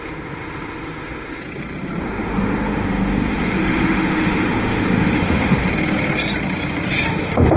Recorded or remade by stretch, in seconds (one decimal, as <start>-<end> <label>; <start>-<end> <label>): 0.0-1.4 remade; 1.4-2.0 recorded; 2.0-5.7 remade; 5.7-7.1 recorded; 7.1-7.6 remade